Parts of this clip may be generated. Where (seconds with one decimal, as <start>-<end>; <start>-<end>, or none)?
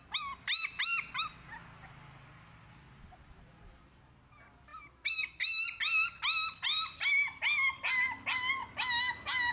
none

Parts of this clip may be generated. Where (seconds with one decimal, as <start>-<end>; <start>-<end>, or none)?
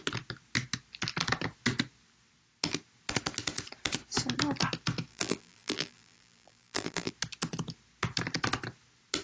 5.1-7.1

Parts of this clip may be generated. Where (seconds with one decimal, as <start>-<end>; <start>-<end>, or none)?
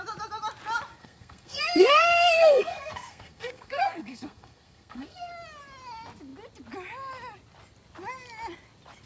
1.0-5.3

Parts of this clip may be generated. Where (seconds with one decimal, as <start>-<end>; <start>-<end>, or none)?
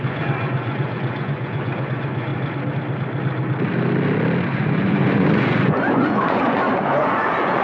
0.0-2.3; 4.5-7.6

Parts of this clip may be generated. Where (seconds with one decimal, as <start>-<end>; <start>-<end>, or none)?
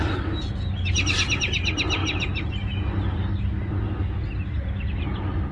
none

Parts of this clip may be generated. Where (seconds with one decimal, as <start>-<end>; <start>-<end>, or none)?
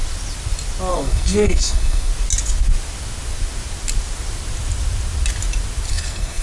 0.9-2.1; 5.9-6.4